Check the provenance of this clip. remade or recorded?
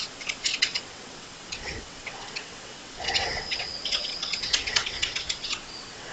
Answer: remade